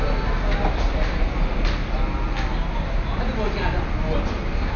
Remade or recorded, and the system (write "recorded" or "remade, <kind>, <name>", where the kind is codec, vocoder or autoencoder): recorded